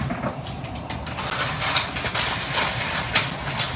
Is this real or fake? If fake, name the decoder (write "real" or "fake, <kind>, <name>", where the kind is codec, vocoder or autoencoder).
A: real